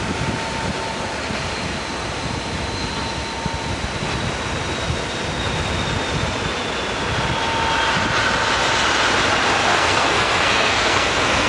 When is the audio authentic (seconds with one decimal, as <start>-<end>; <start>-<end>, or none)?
0.0-9.6